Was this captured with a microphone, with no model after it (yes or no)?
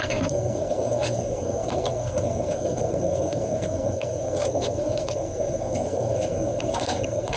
no